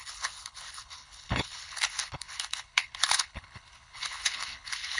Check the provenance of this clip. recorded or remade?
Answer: remade